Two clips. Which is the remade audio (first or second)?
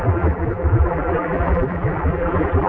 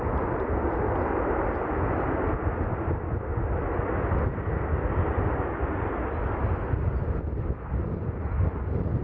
first